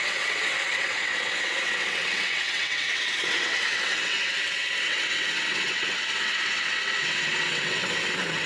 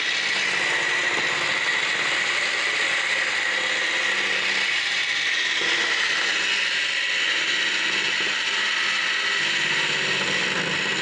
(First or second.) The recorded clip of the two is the second